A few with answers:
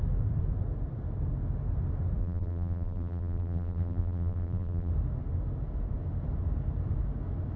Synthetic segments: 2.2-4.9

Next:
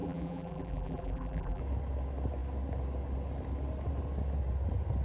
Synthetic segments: 0.0-1.6

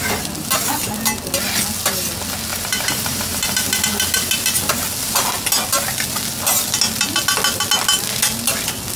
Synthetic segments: 2.5-3.8

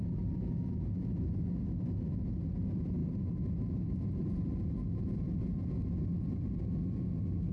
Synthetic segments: 3.0-4.5

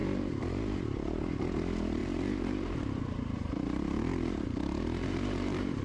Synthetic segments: 0.0-1.2; 2.0-5.8

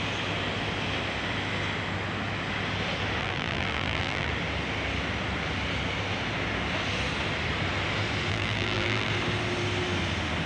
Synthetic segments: 3.2-4.3; 8.3-9.1

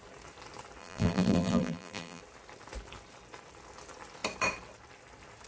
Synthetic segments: 0.8-2.2

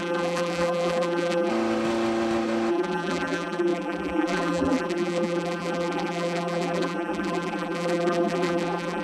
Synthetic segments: 0.0-1.5; 2.7-9.0